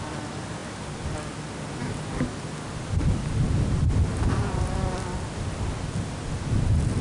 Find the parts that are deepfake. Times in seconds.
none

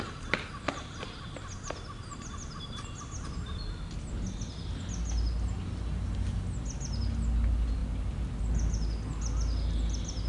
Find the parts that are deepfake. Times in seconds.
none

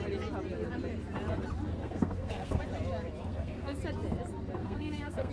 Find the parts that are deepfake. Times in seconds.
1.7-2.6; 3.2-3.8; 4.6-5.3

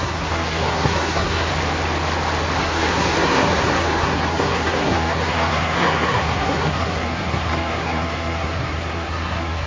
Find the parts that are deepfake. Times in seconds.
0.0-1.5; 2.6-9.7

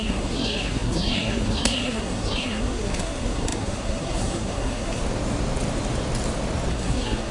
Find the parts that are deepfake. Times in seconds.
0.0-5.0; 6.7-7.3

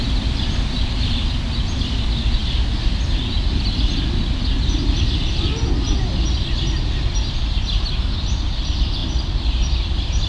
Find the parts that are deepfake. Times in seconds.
none

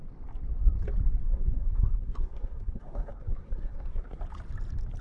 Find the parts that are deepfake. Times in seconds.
1.2-4.2

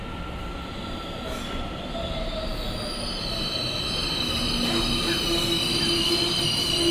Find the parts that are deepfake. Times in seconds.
none